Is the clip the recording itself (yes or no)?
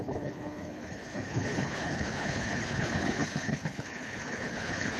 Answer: no